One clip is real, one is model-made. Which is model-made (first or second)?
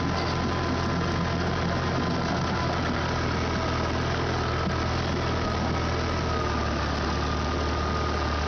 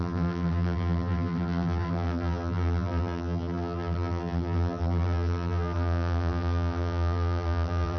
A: second